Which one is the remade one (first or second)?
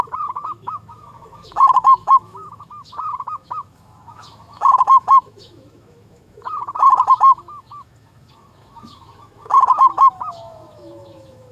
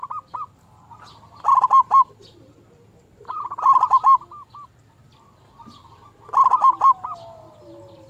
first